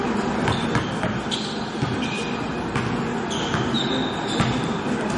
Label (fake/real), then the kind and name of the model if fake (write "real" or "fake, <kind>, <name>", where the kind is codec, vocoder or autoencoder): real